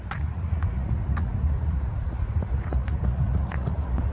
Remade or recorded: remade